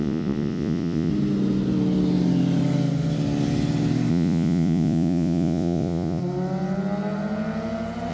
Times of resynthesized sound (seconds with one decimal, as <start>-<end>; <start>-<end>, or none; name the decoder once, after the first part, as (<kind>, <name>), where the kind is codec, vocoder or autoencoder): 0.0-1.1 (vocoder, Vocos); 4.1-6.2